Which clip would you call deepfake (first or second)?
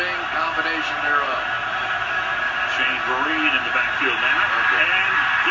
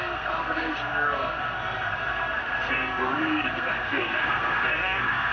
second